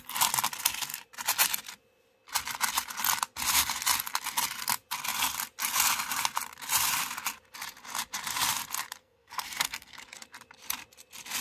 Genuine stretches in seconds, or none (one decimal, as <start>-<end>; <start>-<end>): 0.0-9.0; 10.0-11.4